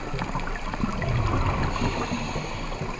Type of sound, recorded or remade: recorded